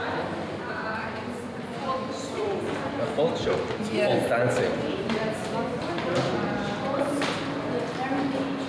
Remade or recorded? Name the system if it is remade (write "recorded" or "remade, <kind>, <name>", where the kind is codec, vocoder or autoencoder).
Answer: recorded